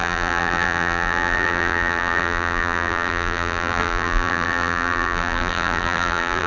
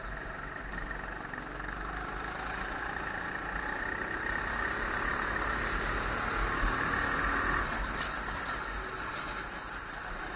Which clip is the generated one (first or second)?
first